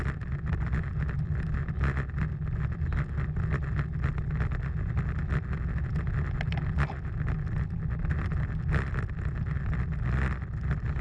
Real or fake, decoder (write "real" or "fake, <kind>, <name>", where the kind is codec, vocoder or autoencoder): real